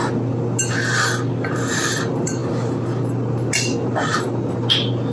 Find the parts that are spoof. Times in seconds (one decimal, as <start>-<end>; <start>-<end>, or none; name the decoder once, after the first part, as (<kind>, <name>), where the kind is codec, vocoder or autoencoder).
none